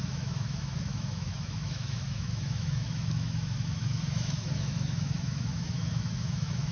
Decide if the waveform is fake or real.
fake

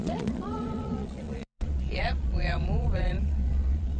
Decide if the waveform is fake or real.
fake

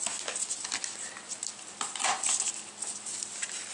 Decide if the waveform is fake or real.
real